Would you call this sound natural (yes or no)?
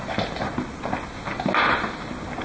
yes